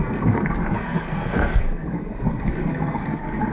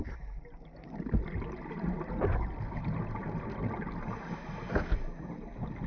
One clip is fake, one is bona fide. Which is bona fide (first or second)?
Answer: second